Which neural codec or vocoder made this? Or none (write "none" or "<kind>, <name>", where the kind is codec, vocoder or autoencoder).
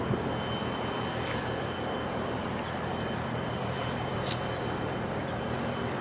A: none